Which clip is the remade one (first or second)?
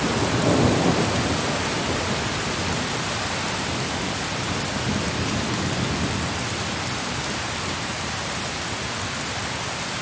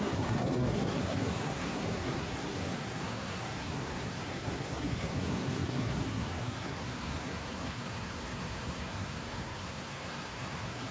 second